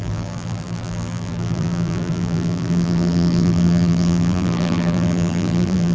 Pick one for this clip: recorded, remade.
remade